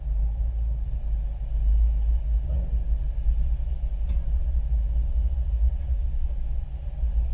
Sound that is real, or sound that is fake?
real